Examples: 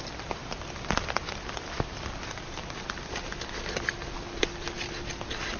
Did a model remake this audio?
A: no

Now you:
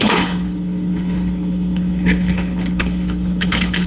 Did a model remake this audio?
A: yes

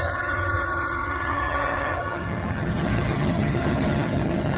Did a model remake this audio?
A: yes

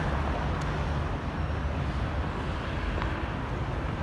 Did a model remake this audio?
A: no